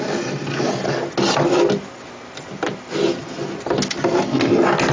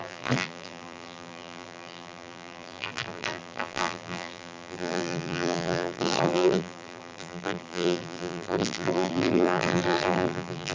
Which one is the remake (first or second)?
second